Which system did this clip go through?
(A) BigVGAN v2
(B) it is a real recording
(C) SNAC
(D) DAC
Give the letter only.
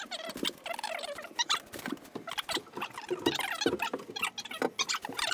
B